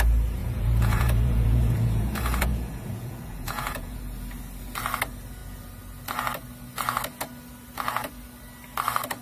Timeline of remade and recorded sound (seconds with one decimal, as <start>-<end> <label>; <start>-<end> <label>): 0.0-0.4 recorded; 0.4-4.0 remade; 4.0-9.2 recorded